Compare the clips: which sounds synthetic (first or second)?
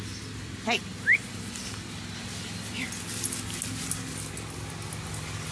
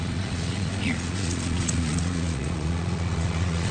second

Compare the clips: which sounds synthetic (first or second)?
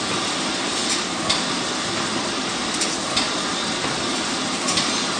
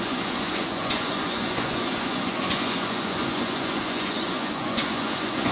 second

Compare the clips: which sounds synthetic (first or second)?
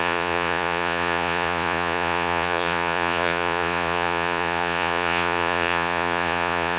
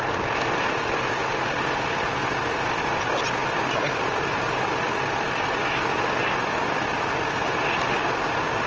first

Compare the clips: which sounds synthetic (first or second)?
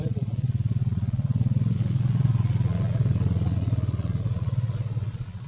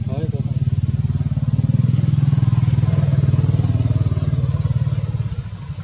first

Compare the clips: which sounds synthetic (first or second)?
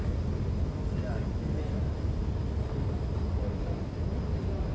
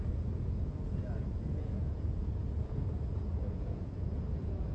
second